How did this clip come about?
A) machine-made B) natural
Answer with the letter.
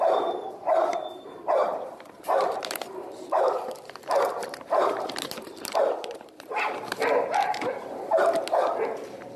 A